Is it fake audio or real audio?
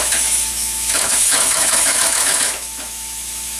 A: fake